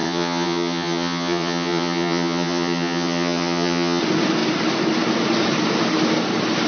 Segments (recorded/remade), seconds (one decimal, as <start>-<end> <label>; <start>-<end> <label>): 0.0-4.0 remade; 4.0-6.7 recorded